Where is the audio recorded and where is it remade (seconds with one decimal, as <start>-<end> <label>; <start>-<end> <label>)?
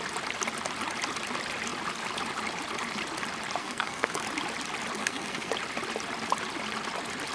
0.0-3.6 recorded; 3.6-4.2 remade; 4.2-5.0 recorded; 5.0-5.5 remade; 5.5-7.3 recorded